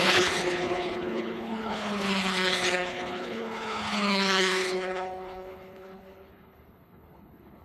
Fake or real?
fake